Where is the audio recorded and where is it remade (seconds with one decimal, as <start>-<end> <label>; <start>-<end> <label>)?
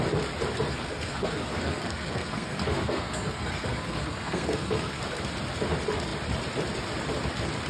0.0-0.7 recorded; 0.7-5.0 remade; 5.0-7.7 recorded